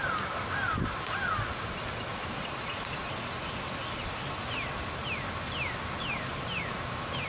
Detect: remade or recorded recorded